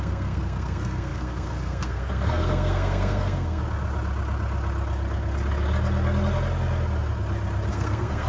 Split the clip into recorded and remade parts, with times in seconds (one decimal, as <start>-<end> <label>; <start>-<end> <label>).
0.0-3.6 remade; 3.6-7.7 recorded; 7.7-8.3 remade